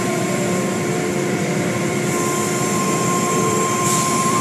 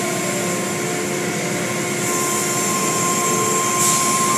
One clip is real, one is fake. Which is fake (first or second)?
first